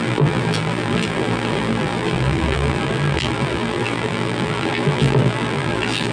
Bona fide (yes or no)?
no